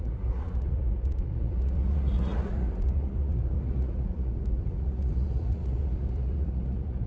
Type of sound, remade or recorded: remade